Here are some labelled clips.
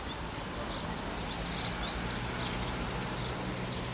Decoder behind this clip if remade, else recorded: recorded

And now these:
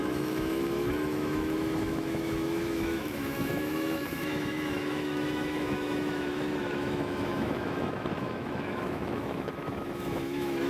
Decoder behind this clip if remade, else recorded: remade, autoencoder, DAC-VAE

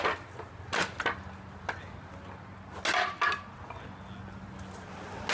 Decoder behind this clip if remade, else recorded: recorded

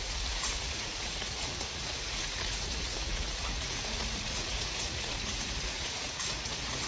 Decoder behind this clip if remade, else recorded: remade, vocoder, Vocos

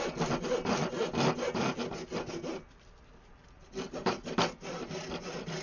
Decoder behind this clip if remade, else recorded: recorded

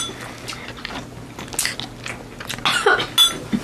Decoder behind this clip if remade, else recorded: recorded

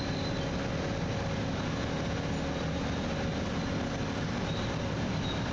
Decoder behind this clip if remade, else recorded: recorded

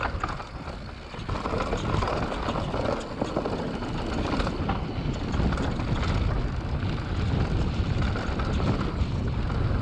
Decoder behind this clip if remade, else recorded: recorded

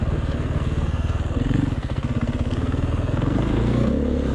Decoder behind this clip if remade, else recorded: remade, codec, SNAC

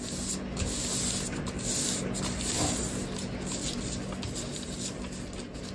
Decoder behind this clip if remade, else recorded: recorded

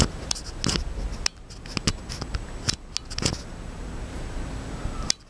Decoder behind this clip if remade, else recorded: recorded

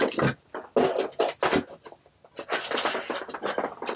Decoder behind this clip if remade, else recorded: recorded